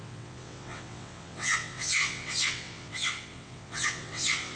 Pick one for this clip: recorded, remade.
remade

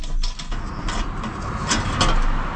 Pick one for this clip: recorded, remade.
recorded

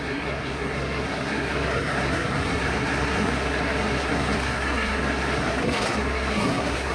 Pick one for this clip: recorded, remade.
remade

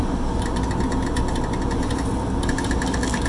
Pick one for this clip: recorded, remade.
recorded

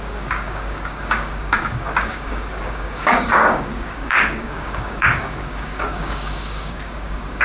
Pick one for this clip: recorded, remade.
remade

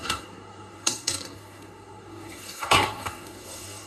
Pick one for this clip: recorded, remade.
remade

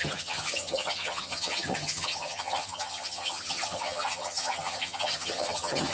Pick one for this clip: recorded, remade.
remade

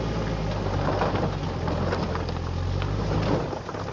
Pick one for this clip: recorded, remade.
recorded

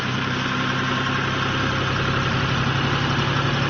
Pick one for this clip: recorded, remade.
recorded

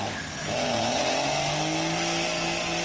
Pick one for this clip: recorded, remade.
recorded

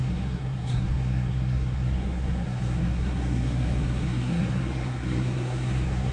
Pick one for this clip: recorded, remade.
remade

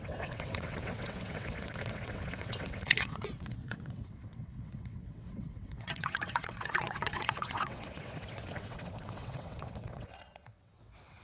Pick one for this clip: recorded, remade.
remade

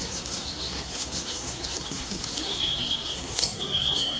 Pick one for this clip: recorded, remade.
remade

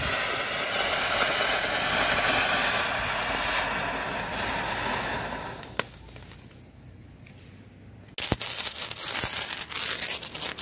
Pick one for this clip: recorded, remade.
recorded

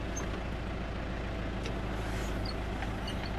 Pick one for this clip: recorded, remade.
recorded